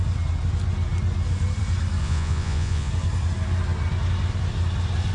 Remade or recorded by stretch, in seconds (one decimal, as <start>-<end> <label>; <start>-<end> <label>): 0.0-2.0 recorded; 2.0-2.9 remade; 2.9-5.1 recorded